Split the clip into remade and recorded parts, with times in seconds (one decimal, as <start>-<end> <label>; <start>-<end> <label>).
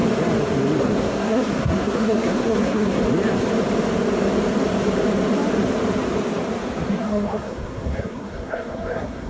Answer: 0.0-0.8 recorded; 0.8-3.0 remade; 3.0-7.0 recorded; 7.0-9.3 remade